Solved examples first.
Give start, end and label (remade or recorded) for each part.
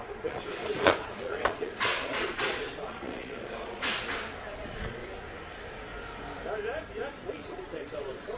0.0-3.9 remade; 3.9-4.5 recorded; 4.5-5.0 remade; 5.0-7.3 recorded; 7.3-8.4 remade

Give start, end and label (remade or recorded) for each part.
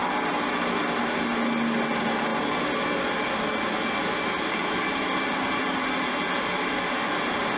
0.0-7.6 recorded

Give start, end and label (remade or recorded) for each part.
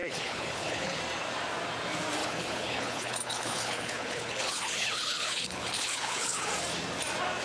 0.0-1.0 remade; 1.0-2.2 recorded; 2.2-6.5 remade; 6.5-7.4 recorded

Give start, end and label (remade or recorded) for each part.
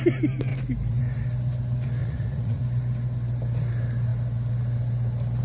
0.0-2.0 recorded; 2.0-2.6 remade; 2.6-5.4 recorded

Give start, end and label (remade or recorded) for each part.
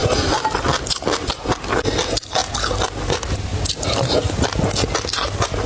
0.0-5.7 recorded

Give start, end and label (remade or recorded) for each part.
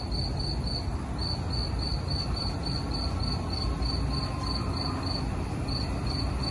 0.0-6.5 recorded